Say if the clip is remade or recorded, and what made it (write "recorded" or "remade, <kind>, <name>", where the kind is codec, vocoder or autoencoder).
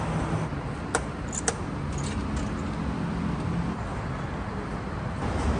recorded